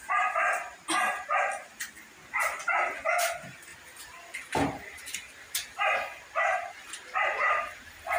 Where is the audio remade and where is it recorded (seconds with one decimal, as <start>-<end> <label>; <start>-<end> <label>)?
0.0-3.7 recorded; 3.7-8.2 remade

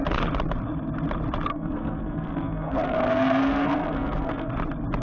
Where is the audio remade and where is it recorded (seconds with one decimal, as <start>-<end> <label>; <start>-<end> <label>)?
0.0-1.5 recorded; 1.5-4.5 remade; 4.5-5.0 recorded

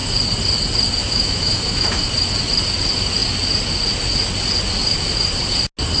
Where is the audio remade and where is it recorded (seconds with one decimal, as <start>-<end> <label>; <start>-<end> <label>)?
0.0-1.0 recorded; 1.0-2.1 remade; 2.1-6.0 recorded

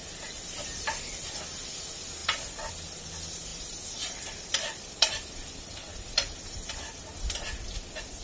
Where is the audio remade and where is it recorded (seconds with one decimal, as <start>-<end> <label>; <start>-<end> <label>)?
0.0-3.5 recorded; 3.5-7.0 remade; 7.0-8.2 recorded

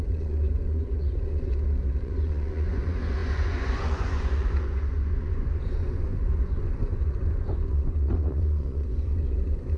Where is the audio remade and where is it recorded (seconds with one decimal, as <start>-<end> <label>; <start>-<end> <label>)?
0.0-1.5 remade; 1.5-2.0 recorded; 2.0-9.8 remade

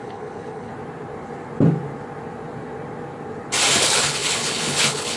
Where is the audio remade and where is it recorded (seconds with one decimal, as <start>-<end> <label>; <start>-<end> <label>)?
0.0-0.7 remade; 0.7-3.8 recorded; 3.8-5.2 remade

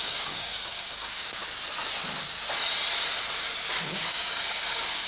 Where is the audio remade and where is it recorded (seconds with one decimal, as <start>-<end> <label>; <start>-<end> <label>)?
0.0-1.4 remade; 1.4-3.8 recorded; 3.8-5.1 remade

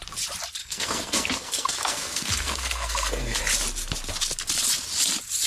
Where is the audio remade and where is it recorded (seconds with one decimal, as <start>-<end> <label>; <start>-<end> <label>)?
0.0-0.6 recorded; 0.6-3.4 remade; 3.4-5.5 recorded